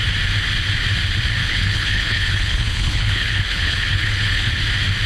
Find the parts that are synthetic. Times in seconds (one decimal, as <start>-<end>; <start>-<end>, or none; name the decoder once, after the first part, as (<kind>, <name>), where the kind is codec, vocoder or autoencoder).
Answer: 1.4-4.5 (codec, HILCodec)